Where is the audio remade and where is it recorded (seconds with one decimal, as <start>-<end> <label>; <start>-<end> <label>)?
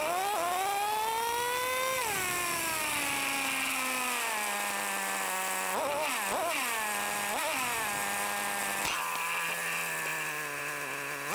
0.0-11.3 recorded